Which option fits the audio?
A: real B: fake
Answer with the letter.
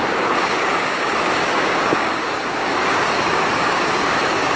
B